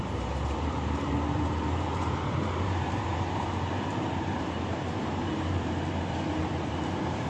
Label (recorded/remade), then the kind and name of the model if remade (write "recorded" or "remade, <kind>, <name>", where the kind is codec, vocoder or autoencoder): remade, vocoder, BigVGAN v2